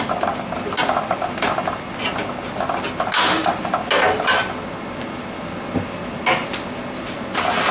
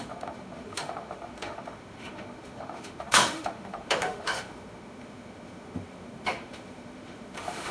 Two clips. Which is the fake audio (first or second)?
second